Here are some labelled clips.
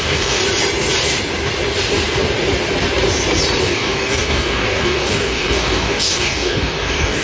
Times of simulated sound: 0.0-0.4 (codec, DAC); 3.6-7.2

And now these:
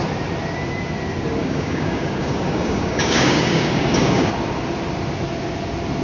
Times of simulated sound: 1.4-4.3 (codec, DAC)

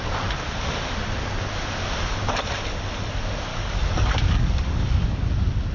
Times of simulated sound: 3.5-5.3 (codec, DAC)